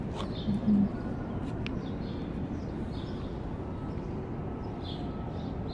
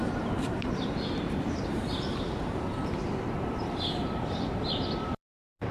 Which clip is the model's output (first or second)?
second